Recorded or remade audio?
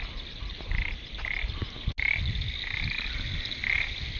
recorded